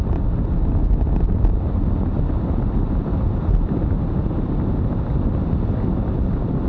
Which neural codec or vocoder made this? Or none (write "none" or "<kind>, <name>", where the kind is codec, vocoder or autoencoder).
none